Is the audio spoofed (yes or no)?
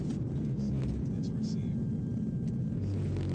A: no